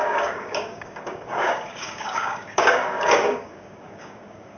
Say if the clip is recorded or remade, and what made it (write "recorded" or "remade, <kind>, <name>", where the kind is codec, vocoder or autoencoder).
remade, codec, DAC